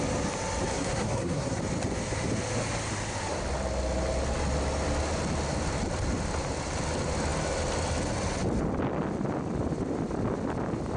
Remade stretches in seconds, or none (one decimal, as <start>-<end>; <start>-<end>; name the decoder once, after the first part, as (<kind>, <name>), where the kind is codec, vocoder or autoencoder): 0.7-1.6 (codec, SNAC)